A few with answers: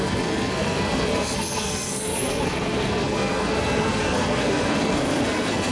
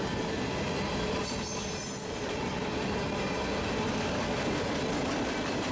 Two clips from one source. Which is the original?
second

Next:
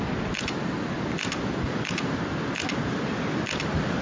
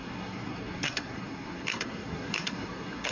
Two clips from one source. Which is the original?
first